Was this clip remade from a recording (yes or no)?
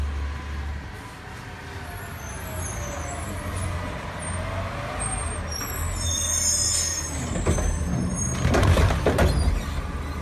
no